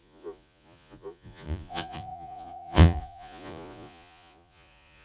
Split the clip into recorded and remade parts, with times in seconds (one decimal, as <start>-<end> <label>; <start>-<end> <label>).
0.0-5.0 remade